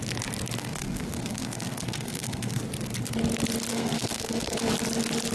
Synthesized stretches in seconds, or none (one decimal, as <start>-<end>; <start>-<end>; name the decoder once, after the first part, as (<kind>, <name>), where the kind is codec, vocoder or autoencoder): 0.6-2.6 (codec, SNAC); 3.7-4.7